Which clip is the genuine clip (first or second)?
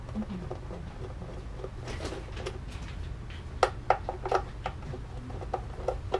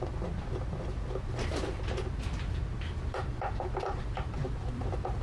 first